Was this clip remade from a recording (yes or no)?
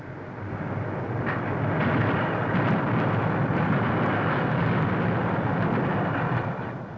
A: no